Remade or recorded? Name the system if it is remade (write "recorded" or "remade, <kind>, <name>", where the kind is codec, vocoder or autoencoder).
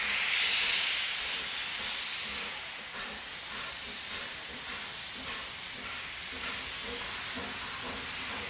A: recorded